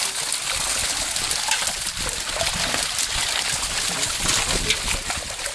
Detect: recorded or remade recorded